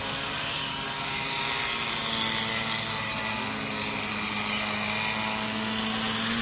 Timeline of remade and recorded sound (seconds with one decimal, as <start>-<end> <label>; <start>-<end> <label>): 0.0-1.4 remade; 1.4-6.4 recorded